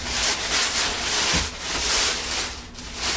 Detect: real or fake real